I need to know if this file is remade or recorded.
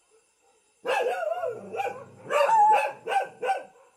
recorded